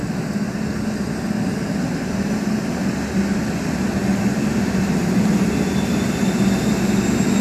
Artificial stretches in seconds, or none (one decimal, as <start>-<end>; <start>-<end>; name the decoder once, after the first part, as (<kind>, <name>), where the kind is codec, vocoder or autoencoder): none